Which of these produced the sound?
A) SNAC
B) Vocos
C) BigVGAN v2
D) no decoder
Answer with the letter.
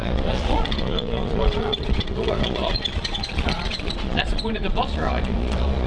B